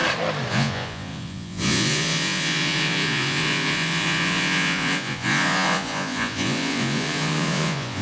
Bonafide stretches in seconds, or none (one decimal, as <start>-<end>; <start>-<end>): 0.0-0.5